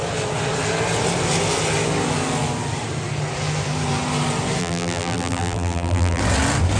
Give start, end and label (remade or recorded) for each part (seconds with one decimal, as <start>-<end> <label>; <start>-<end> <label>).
0.0-4.6 recorded; 4.6-6.2 remade; 6.2-6.8 recorded